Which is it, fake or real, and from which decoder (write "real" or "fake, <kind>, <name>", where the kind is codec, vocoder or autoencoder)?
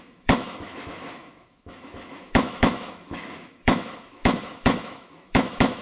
fake, autoencoder, DAC-VAE